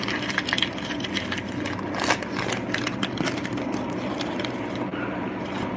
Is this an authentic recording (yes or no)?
yes